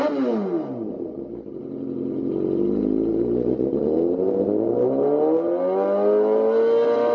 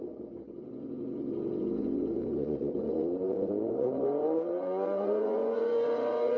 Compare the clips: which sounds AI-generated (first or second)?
second